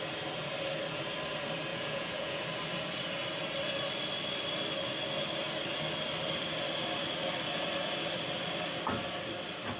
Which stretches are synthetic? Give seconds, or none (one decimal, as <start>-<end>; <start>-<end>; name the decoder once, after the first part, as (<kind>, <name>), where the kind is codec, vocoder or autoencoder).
1.7-2.4 (vocoder, Vocos)